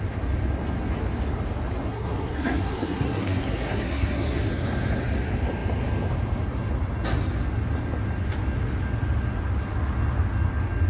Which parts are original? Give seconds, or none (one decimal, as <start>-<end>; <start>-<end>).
0.0-1.9; 4.5-10.9